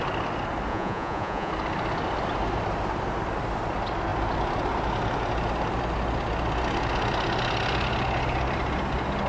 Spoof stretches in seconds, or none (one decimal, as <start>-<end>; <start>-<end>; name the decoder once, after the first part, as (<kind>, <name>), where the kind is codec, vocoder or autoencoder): 0.7-1.5 (vocoder, Vocos)